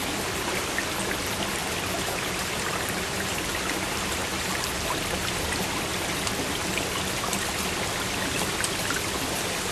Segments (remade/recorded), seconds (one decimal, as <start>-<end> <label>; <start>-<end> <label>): 0.0-9.7 recorded